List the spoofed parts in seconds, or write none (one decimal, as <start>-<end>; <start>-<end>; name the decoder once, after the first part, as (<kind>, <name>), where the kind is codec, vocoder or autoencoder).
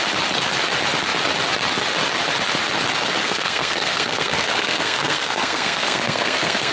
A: 3.2-6.7 (codec, SNAC)